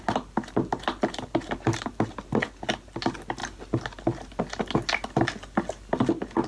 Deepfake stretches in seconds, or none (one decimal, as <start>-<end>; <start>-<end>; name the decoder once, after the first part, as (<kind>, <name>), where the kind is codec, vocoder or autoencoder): none